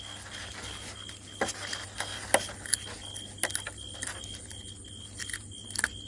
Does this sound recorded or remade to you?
recorded